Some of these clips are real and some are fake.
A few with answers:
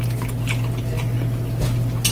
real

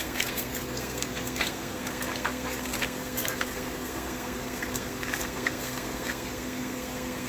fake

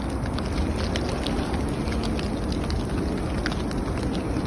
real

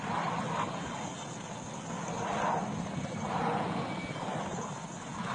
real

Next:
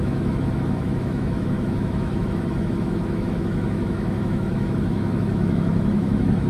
fake